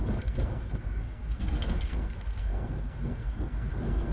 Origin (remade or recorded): remade